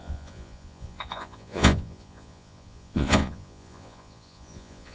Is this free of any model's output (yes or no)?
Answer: no